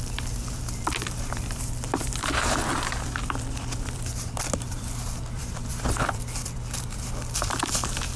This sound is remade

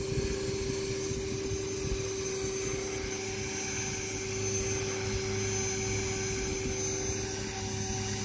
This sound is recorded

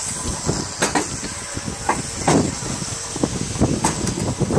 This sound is recorded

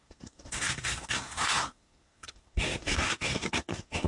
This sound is remade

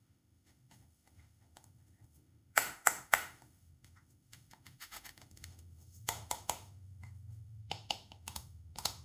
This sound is remade